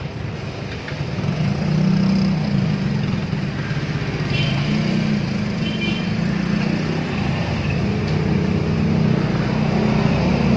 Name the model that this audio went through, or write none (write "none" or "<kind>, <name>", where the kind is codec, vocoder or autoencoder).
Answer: none